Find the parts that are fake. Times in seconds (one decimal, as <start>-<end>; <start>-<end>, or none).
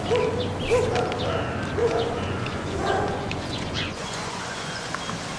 1.8-5.0